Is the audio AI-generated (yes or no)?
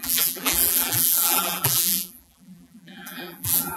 yes